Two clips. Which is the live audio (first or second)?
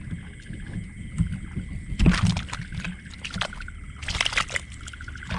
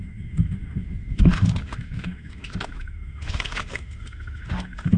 first